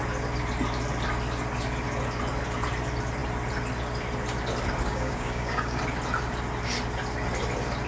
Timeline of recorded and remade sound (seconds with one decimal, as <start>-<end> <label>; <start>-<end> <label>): 0.0-4.9 recorded; 4.9-5.8 remade; 5.8-7.9 recorded